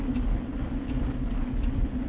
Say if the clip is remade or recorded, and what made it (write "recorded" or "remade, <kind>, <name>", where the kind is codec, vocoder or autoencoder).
recorded